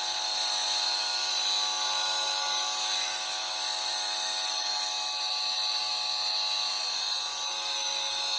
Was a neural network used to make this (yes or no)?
yes